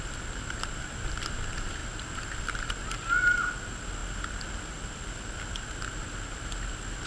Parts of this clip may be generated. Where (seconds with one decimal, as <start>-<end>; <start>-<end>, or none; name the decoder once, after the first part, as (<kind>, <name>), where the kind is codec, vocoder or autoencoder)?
none

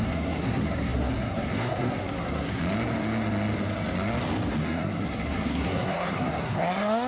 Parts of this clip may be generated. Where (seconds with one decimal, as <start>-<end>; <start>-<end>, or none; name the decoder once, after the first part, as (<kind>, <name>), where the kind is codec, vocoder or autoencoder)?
0.0-2.6 (codec, SNAC); 4.6-7.1

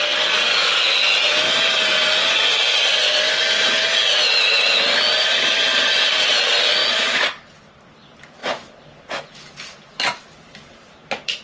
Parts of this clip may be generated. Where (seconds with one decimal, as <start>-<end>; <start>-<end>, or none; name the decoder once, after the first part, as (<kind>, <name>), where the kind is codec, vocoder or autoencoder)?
none

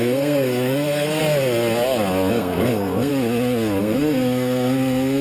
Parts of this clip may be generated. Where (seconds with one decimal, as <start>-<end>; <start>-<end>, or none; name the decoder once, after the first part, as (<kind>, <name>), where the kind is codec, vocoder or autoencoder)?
0.0-1.2 (codec, SNAC); 2.3-3.1; 3.8-5.2

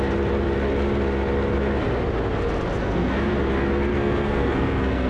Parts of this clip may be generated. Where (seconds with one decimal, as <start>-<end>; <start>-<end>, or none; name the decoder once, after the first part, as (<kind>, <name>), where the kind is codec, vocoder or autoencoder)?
2.8-3.3 (codec, SNAC); 3.9-5.1

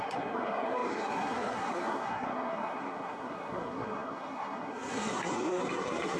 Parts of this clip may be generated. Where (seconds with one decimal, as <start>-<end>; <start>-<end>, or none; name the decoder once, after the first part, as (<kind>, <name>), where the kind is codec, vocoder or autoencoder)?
0.0-6.2 (codec, SNAC)

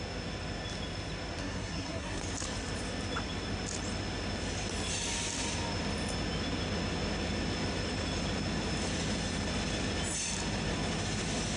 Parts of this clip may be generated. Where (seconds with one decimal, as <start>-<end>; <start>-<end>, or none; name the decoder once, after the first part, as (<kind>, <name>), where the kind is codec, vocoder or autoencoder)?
1.4-2.2 (codec, SNAC)

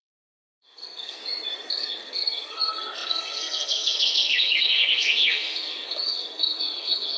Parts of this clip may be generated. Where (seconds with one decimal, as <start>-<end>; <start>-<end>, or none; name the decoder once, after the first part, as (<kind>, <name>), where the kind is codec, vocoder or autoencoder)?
0.0-1.2 (codec, SNAC); 1.7-7.2